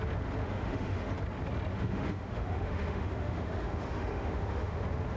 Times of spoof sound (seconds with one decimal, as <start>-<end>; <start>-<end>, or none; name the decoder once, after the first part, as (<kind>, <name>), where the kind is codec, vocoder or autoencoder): 0.4-1.1 (autoencoder, DAC-VAE); 1.7-4.8